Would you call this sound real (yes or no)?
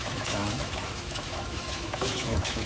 no